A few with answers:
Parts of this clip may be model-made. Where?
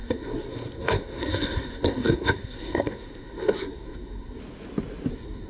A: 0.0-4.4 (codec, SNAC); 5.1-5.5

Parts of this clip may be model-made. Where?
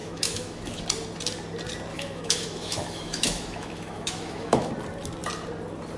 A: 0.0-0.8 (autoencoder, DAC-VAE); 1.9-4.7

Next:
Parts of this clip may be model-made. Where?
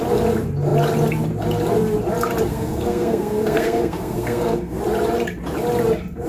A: 2.5-4.8 (codec, SNAC)